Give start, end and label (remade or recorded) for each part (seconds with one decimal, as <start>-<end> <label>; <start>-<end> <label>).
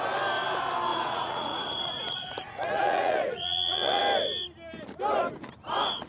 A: 0.0-0.9 recorded; 0.9-4.0 remade; 4.0-6.1 recorded